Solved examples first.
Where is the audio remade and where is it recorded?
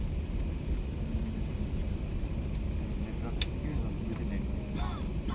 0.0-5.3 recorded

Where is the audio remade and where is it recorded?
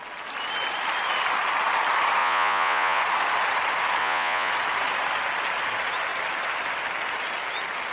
0.0-2.2 recorded; 2.2-3.0 remade; 3.0-4.0 recorded; 4.0-4.5 remade; 4.5-7.9 recorded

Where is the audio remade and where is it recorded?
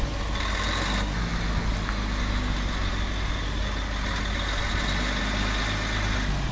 0.0-6.5 recorded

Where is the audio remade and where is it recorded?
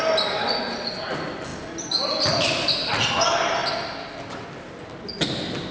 0.0-5.7 recorded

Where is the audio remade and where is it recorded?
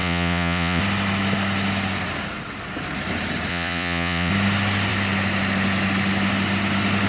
0.0-0.8 remade; 0.8-3.5 recorded; 3.5-4.3 remade; 4.3-7.1 recorded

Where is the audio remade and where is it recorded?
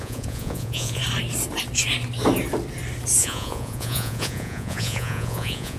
0.0-1.0 remade; 1.0-3.2 recorded; 3.2-5.8 remade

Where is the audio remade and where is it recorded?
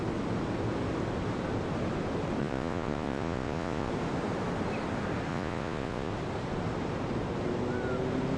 0.0-2.4 recorded; 2.4-3.9 remade; 3.9-5.3 recorded; 5.3-6.1 remade; 6.1-8.4 recorded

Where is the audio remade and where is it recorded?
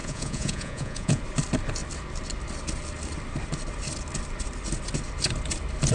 0.0-1.2 remade; 1.2-5.9 recorded